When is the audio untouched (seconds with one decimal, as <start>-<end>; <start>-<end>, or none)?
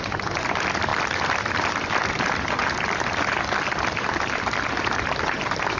2.6-3.1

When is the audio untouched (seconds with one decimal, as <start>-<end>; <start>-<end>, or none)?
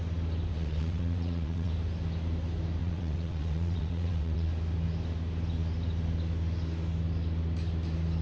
0.0-0.5; 1.7-2.8; 4.5-8.2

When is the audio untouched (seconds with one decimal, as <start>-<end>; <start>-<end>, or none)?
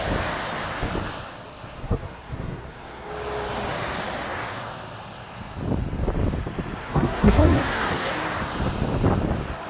0.0-1.8; 3.1-6.8; 8.1-9.7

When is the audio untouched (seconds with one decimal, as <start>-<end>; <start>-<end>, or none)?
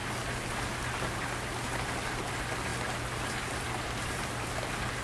0.0-5.0